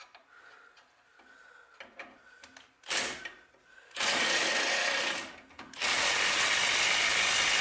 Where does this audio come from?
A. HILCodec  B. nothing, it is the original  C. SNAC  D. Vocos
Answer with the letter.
B